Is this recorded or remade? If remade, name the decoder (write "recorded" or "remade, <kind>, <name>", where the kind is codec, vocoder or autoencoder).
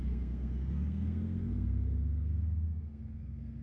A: remade, codec, SNAC